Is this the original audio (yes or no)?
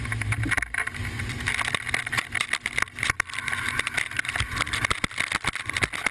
yes